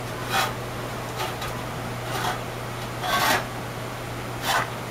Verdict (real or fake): real